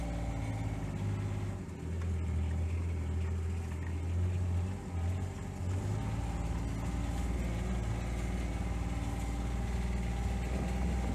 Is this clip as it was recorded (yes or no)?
yes